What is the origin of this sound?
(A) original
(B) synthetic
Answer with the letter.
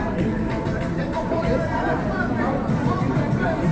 B